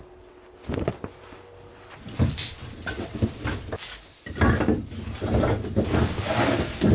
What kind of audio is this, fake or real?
real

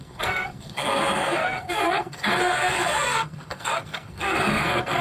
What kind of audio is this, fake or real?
fake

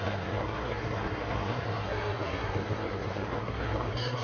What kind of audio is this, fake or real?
fake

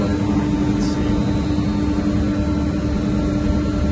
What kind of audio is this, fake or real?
real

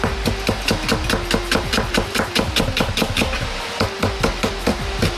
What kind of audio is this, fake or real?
real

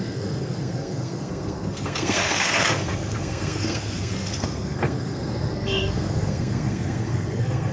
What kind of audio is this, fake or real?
fake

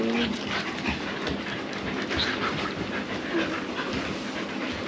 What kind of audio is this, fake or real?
real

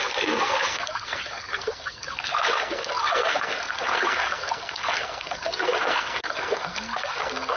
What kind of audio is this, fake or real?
fake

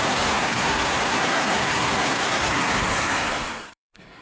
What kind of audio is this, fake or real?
fake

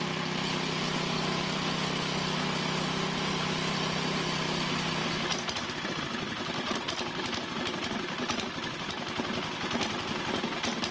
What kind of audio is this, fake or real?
real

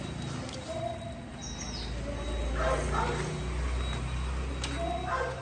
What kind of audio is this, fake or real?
real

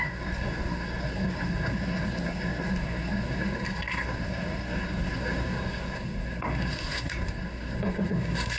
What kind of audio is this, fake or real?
fake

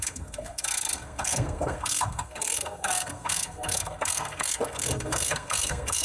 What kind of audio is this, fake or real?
fake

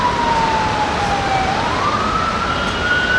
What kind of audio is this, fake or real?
real